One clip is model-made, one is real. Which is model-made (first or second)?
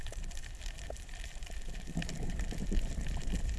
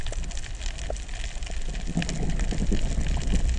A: first